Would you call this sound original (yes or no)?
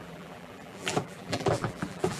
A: no